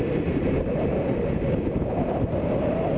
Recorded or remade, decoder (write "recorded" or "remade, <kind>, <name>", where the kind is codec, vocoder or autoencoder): recorded